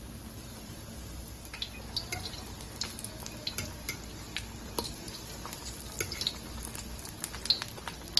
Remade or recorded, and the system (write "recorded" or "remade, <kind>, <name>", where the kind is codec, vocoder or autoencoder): recorded